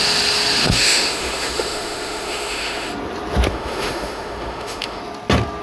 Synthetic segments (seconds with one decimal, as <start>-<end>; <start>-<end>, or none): 0.6-2.9; 3.5-5.0